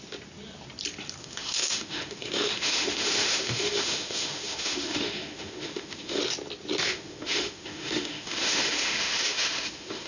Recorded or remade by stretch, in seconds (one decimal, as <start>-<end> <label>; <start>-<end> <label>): 0.0-1.2 recorded; 1.2-6.2 remade; 6.2-6.8 recorded; 6.8-10.1 remade